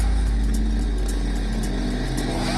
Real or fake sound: real